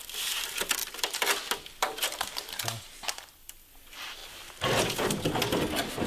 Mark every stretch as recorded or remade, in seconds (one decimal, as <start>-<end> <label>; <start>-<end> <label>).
0.0-6.1 recorded